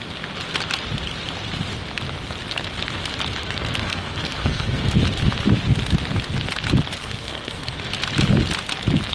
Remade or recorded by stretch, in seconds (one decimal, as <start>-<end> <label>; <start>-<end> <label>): 0.0-3.4 recorded; 3.4-5.0 remade; 5.0-7.0 recorded; 7.0-7.9 remade; 7.9-9.1 recorded